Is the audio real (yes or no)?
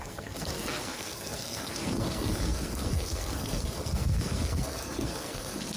no